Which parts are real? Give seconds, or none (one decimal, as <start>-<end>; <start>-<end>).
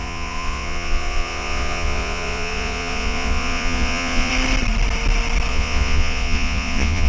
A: 4.3-5.5